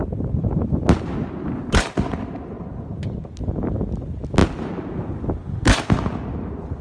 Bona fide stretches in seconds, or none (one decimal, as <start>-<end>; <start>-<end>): 0.0-6.8